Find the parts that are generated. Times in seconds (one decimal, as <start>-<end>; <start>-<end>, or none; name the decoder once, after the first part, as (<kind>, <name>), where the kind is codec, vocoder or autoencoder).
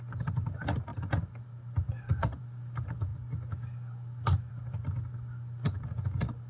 none